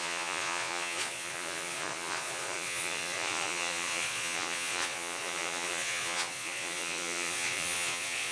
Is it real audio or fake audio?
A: fake